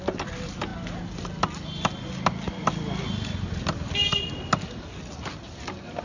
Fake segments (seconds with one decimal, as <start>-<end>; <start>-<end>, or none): none